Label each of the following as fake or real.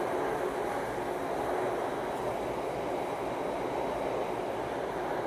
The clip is real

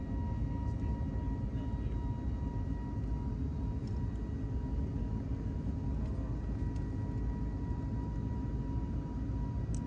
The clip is real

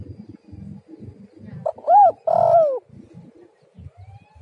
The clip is real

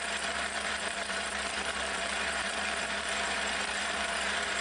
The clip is fake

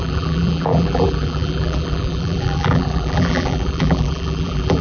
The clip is fake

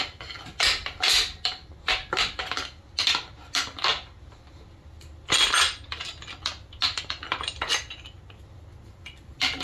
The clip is real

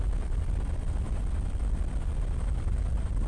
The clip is real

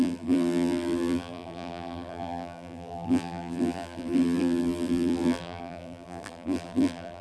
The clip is fake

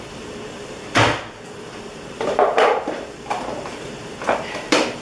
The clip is fake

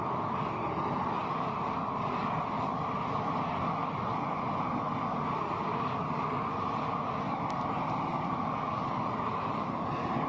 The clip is real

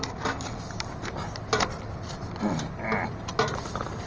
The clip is real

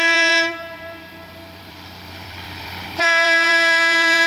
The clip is fake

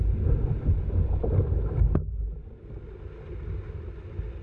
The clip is real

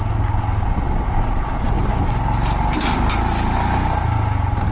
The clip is real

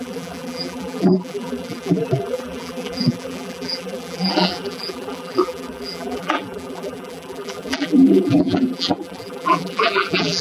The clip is fake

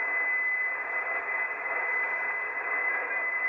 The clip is real